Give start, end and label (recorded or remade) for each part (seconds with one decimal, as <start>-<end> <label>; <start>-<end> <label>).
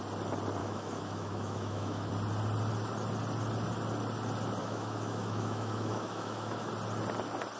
0.0-0.6 recorded; 0.6-2.1 remade; 2.1-4.6 recorded; 4.6-6.7 remade; 6.7-7.6 recorded